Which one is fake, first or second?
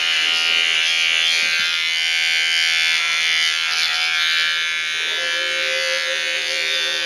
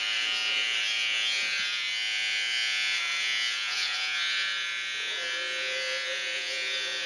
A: second